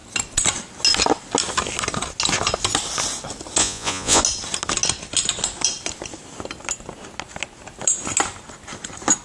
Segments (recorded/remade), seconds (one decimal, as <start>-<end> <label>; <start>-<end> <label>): 0.0-3.6 recorded; 3.6-4.2 remade; 4.2-9.2 recorded